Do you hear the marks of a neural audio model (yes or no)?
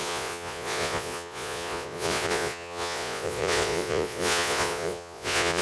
yes